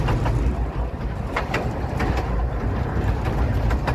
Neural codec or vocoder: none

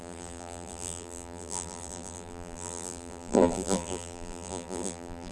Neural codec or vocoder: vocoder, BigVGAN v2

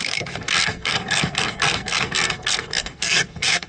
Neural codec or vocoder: codec, SNAC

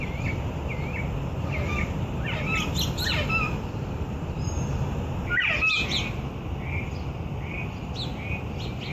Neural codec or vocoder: none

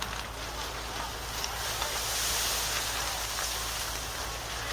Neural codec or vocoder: none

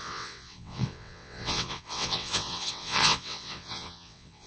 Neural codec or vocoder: vocoder, WaveNeXt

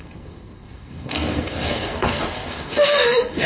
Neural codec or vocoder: codec, SNAC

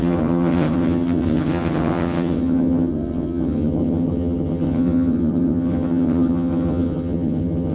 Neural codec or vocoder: vocoder, HiFi-GAN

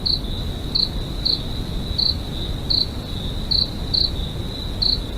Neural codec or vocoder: none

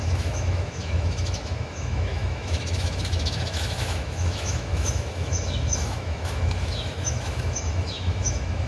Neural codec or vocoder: autoencoder, DAC-VAE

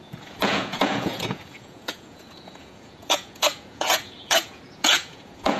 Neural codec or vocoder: vocoder, Vocos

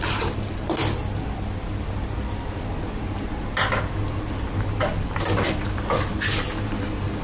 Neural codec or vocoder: none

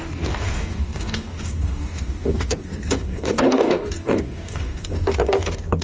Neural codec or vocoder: codec, DAC